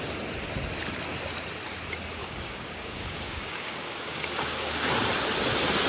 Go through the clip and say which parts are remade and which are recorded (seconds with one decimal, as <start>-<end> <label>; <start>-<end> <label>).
0.0-2.2 recorded; 2.2-4.9 remade; 4.9-5.9 recorded